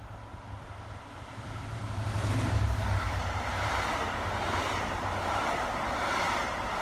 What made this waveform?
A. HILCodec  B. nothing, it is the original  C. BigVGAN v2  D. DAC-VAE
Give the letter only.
C